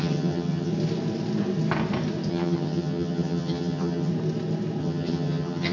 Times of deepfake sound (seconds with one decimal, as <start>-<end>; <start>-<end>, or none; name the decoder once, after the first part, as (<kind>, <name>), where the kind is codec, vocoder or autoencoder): 0.0-0.7 (vocoder, HiFi-GAN); 2.3-4.1; 4.8-5.7